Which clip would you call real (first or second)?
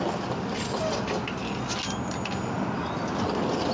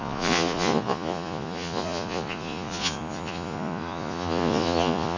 first